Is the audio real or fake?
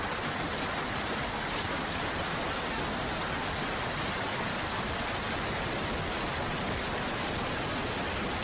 real